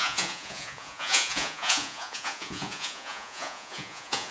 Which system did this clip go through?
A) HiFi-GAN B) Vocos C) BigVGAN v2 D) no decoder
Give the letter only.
B